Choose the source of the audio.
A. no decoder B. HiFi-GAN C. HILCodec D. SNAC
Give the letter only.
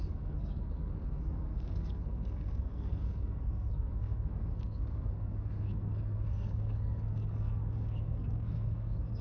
D